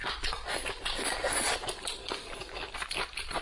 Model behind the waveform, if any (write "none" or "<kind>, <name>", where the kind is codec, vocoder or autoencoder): none